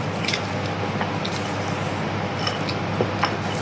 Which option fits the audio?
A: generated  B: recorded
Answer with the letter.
B